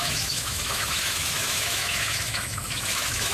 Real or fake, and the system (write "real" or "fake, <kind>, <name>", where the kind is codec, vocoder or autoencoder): fake, autoencoder, DAC-VAE